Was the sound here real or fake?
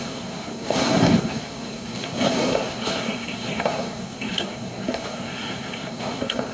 fake